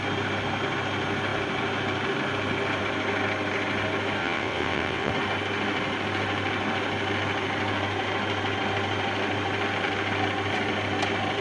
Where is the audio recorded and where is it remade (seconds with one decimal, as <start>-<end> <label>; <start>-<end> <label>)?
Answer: 0.0-4.2 recorded; 4.2-5.1 remade; 5.1-11.4 recorded